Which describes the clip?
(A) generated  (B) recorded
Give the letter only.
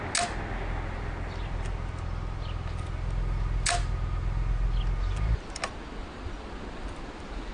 B